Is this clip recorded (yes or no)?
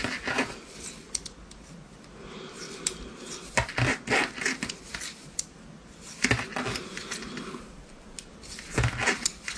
yes